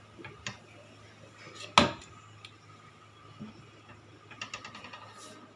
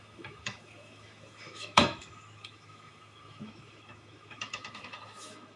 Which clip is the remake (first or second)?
second